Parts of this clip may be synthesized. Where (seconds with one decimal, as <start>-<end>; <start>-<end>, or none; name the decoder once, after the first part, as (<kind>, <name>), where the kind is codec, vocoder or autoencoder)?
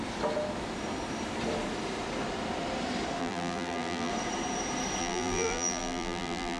3.2-4.1 (vocoder, BigVGAN v2); 5.0-6.6